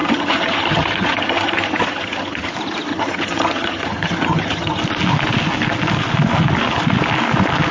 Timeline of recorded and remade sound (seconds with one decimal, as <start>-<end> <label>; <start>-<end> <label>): 0.0-2.5 remade; 2.5-2.9 recorded; 2.9-4.8 remade; 4.8-7.7 recorded